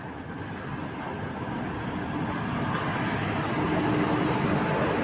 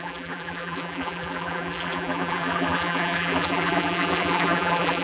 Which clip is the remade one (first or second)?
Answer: second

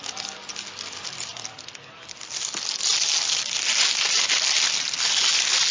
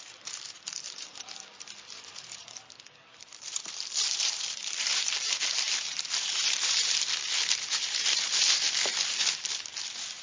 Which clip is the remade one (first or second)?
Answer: second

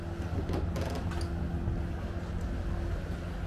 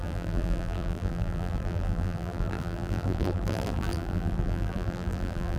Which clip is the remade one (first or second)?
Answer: second